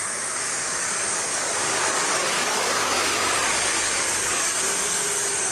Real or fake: fake